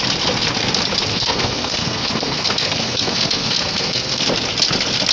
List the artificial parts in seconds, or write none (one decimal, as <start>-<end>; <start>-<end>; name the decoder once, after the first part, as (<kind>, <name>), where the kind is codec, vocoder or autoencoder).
1.1-4.2 (codec, SNAC)